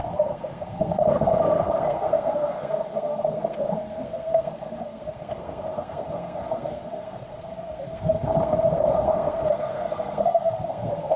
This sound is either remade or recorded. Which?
remade